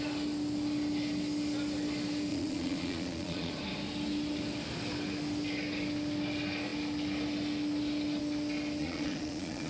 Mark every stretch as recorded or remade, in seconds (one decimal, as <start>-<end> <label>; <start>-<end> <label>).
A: 0.0-2.3 recorded; 2.3-3.5 remade; 3.5-8.8 recorded; 8.8-9.7 remade